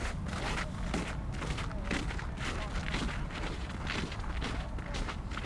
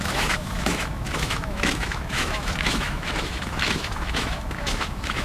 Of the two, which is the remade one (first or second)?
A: second